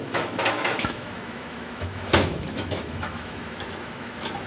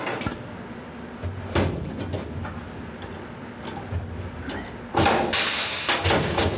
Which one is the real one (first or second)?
second